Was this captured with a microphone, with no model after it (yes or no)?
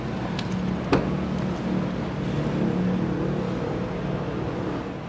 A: yes